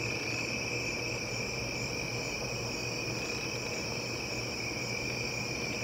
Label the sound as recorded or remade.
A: recorded